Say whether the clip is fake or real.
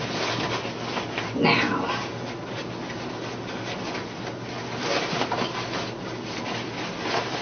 real